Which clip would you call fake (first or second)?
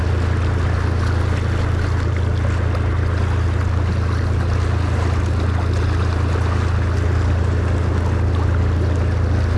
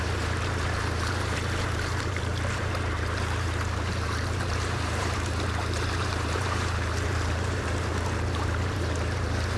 second